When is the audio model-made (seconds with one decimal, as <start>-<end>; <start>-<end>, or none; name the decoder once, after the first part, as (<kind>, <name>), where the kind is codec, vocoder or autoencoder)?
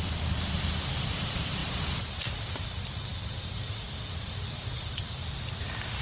0.0-5.2 (vocoder, BigVGAN v2)